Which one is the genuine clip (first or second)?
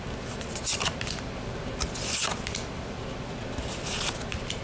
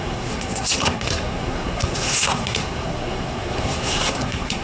first